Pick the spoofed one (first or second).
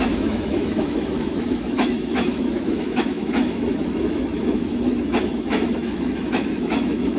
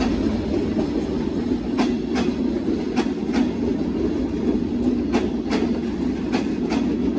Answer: first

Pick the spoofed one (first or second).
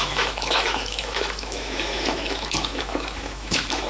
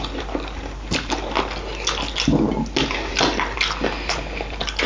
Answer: first